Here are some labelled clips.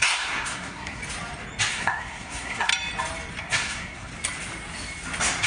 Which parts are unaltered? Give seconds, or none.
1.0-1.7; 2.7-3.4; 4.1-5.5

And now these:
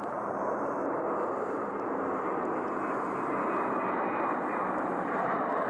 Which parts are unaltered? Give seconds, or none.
0.8-4.2

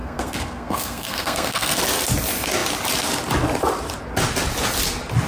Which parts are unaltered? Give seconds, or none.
1.8-5.3

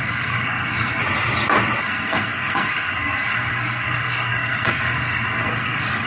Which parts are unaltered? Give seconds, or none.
1.0-1.8

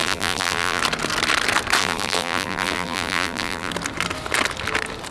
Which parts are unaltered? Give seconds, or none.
0.8-1.8; 3.7-5.1